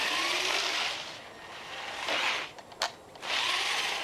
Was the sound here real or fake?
real